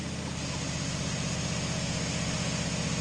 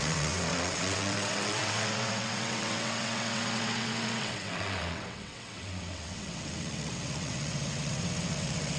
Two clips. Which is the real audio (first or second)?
first